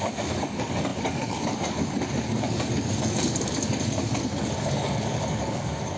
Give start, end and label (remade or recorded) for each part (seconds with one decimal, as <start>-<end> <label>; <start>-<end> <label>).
0.0-6.0 remade